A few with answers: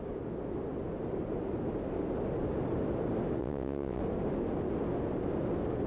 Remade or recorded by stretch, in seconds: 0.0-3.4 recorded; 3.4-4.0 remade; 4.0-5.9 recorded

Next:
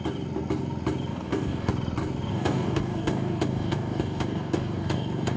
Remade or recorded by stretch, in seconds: 0.0-1.1 recorded; 1.1-1.7 remade; 1.7-2.3 recorded; 2.3-5.4 remade

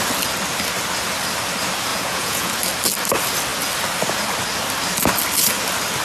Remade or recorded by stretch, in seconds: 0.0-1.9 recorded; 1.9-2.5 remade; 2.5-6.0 recorded

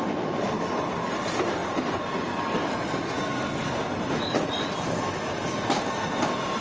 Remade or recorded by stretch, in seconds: 0.0-6.6 recorded

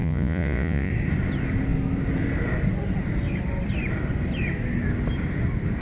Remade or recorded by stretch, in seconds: 0.0-0.9 remade; 0.9-5.8 recorded

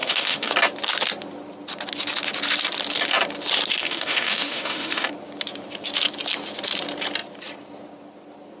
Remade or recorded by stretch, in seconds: 0.0-0.5 remade; 0.5-3.8 recorded; 3.8-5.1 remade; 5.1-8.6 recorded